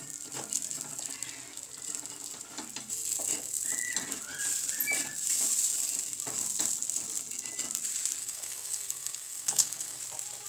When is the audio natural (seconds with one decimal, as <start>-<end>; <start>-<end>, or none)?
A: 0.0-8.2; 10.0-10.5